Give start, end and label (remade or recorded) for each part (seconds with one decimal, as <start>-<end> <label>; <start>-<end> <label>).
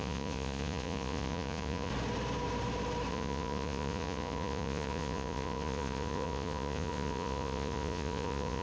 0.0-1.9 remade; 1.9-3.1 recorded; 3.1-8.6 remade